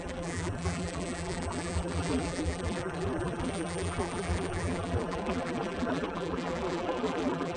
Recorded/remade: remade